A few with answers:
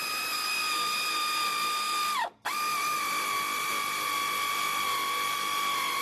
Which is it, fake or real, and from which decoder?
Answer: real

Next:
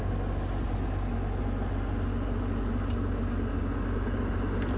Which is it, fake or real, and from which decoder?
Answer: real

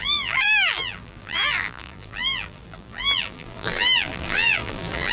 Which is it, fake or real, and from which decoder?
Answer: fake, vocoder, BigVGAN v2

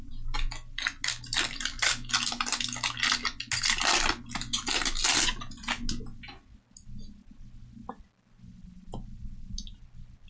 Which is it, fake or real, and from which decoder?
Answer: real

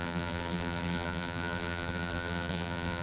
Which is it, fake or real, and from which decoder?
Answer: fake, vocoder, BigVGAN v2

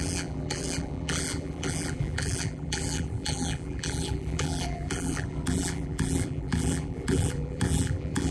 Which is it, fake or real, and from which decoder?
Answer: fake, vocoder, BigVGAN v2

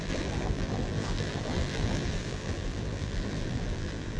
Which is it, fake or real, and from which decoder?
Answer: fake, vocoder, BigVGAN v2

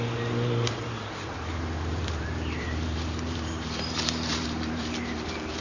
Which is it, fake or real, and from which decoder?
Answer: fake, vocoder, BigVGAN v2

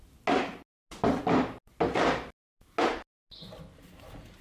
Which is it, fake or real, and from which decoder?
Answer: real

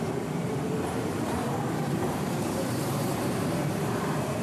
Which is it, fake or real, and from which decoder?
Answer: fake, vocoder, BigVGAN v2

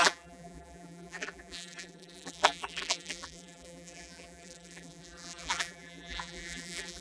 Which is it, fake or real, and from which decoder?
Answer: fake, vocoder, BigVGAN v2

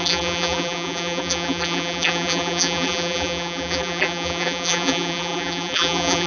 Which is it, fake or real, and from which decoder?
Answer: fake, vocoder, BigVGAN v2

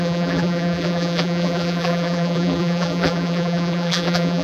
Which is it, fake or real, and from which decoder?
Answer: fake, vocoder, BigVGAN v2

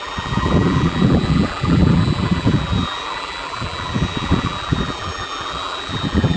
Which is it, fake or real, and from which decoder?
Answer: fake, vocoder, BigVGAN v2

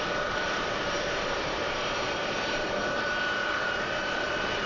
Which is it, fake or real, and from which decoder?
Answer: fake, vocoder, BigVGAN v2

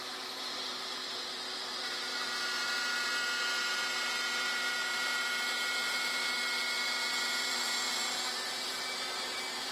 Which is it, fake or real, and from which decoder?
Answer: fake, vocoder, BigVGAN v2